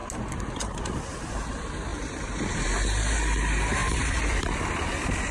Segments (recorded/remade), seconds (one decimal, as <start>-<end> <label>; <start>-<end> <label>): 0.0-3.8 recorded; 3.8-4.4 remade; 4.4-5.3 recorded